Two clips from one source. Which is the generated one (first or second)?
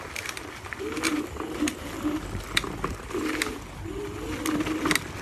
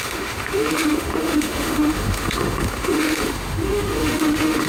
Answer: second